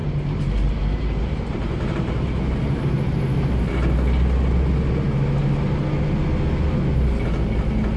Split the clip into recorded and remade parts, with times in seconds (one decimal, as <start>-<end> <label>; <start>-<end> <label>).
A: 0.0-3.5 remade; 3.5-8.0 recorded